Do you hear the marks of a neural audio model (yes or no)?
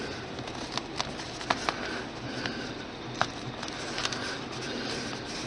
no